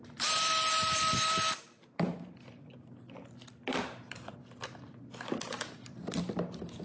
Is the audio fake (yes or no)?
no